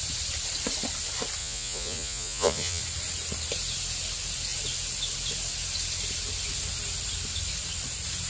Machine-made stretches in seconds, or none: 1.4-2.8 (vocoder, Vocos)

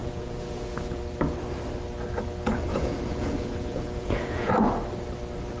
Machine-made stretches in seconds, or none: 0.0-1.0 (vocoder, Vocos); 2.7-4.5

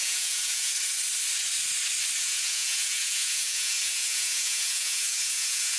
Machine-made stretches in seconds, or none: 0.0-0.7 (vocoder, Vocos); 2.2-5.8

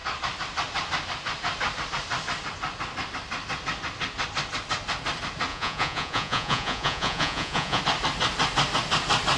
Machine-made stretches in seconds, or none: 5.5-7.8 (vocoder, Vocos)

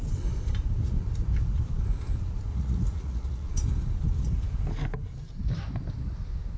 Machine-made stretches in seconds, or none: 2.5-3.5 (vocoder, Vocos)

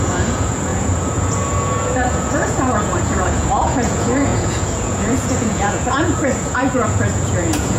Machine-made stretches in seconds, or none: 0.0-7.8 (vocoder, Vocos)